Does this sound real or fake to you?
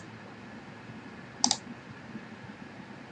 real